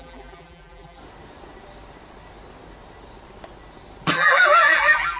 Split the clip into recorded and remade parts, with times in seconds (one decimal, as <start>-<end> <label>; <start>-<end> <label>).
0.0-1.0 remade; 1.0-4.1 recorded; 4.1-5.2 remade

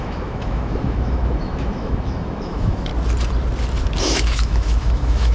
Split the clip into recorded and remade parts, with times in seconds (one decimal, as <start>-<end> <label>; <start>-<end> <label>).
0.0-2.9 remade; 2.9-4.0 recorded; 4.0-5.3 remade